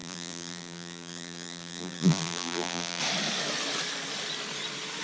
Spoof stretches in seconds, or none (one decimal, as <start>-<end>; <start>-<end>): 0.0-3.0